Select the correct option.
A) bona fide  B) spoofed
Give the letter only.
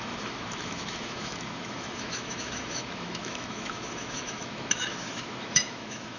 B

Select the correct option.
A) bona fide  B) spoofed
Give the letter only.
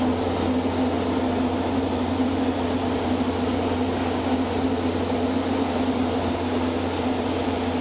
A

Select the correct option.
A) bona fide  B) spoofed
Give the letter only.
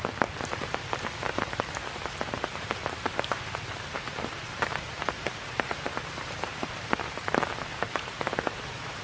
B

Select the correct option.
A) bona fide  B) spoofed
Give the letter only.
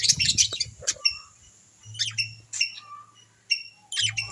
A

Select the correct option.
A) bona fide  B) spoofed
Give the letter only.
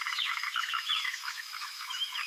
B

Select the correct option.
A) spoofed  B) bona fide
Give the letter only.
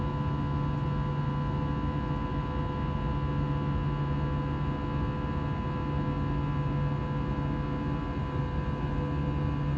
B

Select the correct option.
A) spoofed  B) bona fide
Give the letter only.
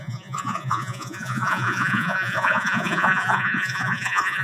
A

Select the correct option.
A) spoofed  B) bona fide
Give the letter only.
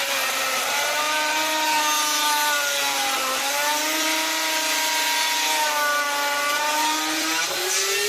A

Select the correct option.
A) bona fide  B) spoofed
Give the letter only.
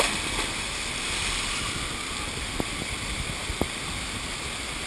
A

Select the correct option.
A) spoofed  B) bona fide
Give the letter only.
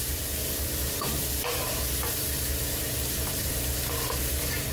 A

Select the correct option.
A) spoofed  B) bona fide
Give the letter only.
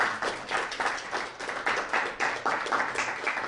B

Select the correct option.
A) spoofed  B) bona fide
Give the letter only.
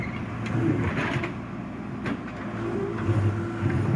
B